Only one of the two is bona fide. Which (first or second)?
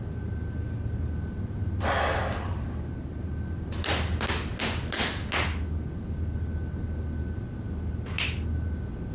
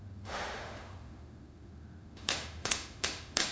first